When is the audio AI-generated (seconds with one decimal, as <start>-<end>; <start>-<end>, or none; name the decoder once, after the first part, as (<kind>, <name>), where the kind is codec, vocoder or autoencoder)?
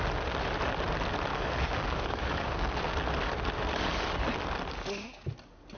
1.3-2.9 (codec, DAC)